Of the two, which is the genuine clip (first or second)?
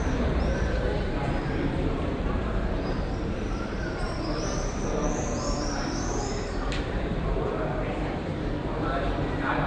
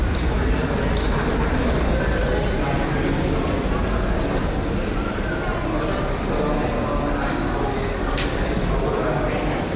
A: second